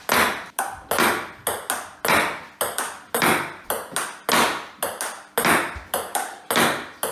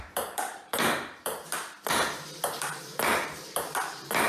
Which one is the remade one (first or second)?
second